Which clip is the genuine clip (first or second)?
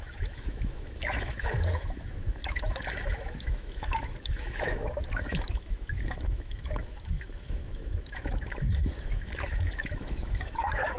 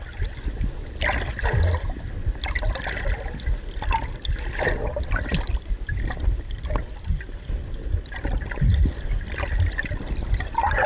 second